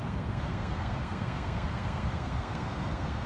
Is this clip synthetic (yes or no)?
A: yes